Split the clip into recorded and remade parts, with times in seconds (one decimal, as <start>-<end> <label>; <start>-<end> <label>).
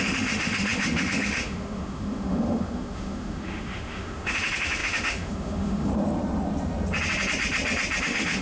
0.0-5.9 remade; 5.9-8.0 recorded; 8.0-8.4 remade